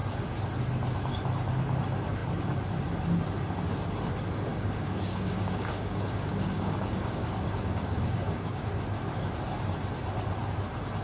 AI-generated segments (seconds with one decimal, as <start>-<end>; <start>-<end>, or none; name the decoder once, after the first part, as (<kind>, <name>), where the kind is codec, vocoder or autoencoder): 4.5-8.7 (codec, DAC)